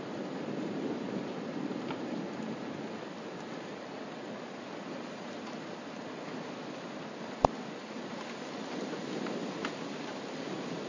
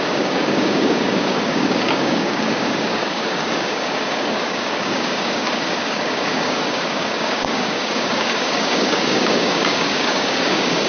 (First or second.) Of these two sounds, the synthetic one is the second